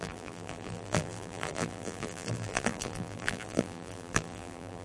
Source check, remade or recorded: remade